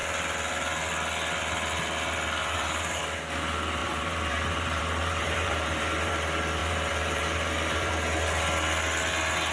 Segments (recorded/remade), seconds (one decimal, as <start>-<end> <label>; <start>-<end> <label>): 0.0-2.4 recorded; 2.4-3.0 remade; 3.0-3.8 recorded; 3.8-6.1 remade; 6.1-6.6 recorded; 6.6-7.9 remade; 7.9-9.5 recorded